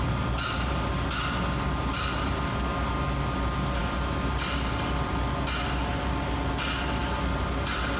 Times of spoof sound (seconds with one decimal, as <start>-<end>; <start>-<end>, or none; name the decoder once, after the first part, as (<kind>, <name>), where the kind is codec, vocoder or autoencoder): none